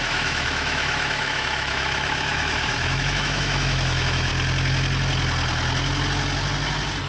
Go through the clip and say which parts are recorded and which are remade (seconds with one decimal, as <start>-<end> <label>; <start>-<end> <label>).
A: 0.0-4.3 remade; 4.3-7.1 recorded